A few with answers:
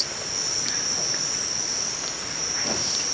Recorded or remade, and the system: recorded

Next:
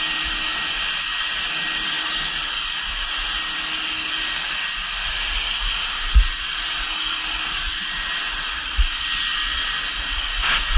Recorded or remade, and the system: recorded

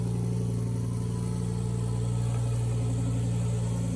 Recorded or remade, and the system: recorded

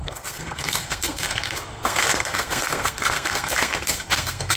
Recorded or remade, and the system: remade, codec, SNAC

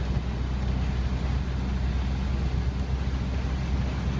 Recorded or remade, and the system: recorded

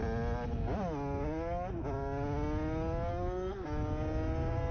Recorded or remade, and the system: recorded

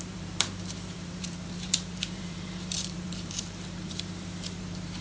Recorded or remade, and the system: remade, vocoder, BigVGAN v2